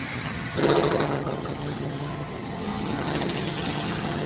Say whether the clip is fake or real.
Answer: fake